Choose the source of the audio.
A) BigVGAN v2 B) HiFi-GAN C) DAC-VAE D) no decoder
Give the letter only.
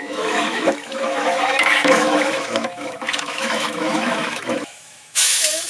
C